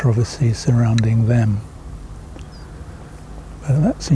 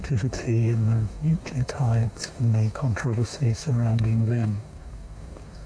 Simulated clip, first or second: second